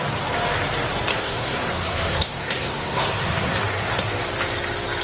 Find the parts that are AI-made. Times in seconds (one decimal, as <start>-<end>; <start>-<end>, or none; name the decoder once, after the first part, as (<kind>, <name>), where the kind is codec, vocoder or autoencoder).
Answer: 1.1-4.1 (codec, SNAC)

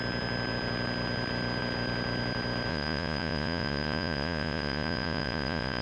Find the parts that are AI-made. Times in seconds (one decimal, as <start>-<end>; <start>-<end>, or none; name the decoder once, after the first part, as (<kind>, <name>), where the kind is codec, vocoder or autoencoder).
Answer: 2.7-5.8 (vocoder, Vocos)

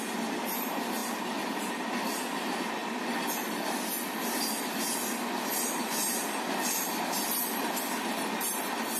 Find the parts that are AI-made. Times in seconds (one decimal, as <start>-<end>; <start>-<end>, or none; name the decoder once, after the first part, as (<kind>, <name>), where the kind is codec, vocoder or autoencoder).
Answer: none